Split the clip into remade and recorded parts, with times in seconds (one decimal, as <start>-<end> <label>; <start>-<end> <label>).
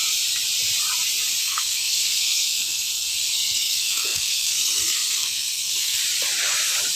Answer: 0.0-1.4 recorded; 1.4-6.0 remade; 6.0-7.0 recorded